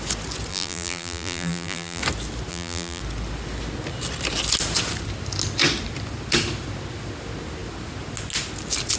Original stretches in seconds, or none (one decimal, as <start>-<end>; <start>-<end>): 0.0-0.5; 2.0-2.5; 3.0-9.0